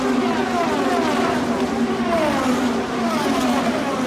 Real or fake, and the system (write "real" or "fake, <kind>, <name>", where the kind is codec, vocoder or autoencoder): real